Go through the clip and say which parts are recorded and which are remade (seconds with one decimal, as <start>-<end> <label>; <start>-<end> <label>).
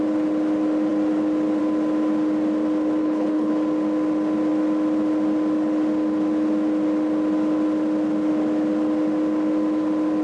0.0-3.0 recorded; 3.0-3.5 remade; 3.5-10.2 recorded